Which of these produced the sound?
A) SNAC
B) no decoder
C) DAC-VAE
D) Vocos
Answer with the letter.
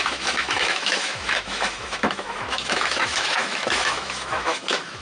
C